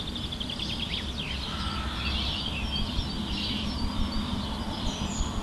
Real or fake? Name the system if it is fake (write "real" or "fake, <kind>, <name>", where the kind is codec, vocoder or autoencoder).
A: real